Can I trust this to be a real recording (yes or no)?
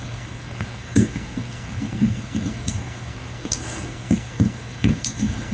no